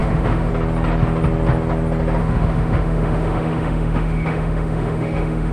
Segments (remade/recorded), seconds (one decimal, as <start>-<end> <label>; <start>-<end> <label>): 0.0-0.5 remade; 0.5-2.2 recorded; 2.2-5.5 remade